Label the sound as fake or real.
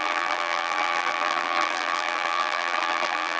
fake